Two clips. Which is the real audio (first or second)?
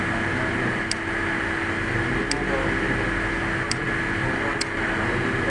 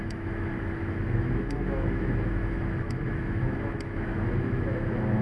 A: first